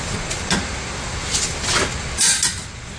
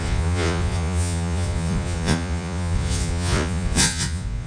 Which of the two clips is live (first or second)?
first